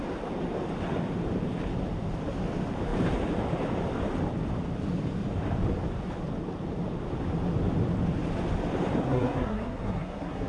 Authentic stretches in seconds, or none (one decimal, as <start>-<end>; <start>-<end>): 0.0-9.0

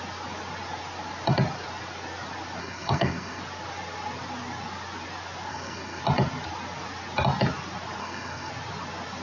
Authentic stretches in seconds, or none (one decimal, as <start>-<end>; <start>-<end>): 0.0-2.6; 3.4-5.5; 6.0-8.0; 8.5-9.2

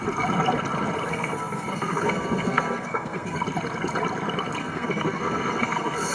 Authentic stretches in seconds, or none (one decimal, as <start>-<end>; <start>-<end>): 0.0-1.1; 3.4-4.6

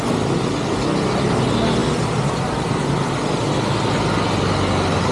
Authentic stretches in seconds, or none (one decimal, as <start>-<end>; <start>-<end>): 0.0-5.1